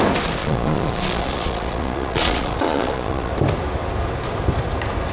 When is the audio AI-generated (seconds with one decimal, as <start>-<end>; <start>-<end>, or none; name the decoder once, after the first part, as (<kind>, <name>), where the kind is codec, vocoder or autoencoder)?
0.4-3.3 (vocoder, Vocos)